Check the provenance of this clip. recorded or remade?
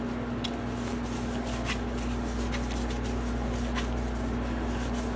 recorded